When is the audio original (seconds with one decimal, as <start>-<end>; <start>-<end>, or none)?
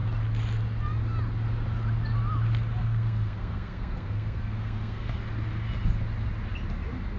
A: 0.0-2.8; 5.1-7.2